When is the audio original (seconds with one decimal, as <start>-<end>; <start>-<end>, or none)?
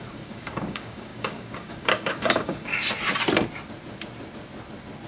2.7-5.1